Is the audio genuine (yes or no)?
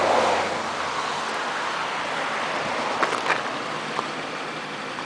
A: yes